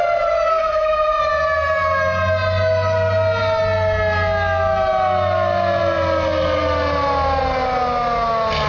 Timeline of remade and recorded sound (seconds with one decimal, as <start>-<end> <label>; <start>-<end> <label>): 0.0-0.5 recorded; 0.5-1.2 remade; 1.2-8.7 recorded